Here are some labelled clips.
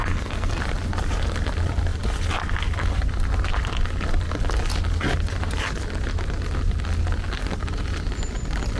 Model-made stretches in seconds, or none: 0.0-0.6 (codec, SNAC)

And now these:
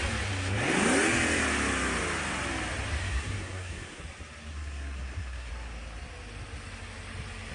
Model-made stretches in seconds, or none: 3.0-4.0 (codec, SNAC); 4.5-5.5

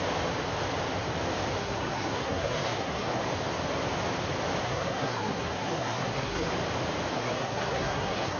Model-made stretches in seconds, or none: 1.6-3.2 (codec, SNAC); 4.6-6.5; 7.1-8.4

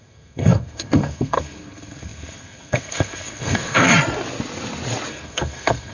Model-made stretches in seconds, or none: 0.0-3.9 (codec, SNAC); 5.1-5.9

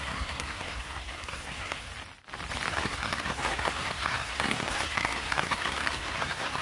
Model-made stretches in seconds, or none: 0.0-1.9 (codec, SNAC); 2.7-6.6

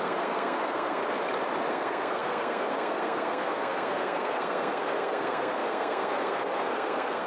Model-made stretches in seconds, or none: 0.0-1.0 (codec, SNAC); 1.7-7.3

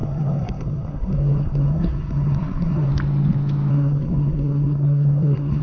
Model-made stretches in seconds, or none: 0.0-2.9 (codec, SNAC); 3.7-5.6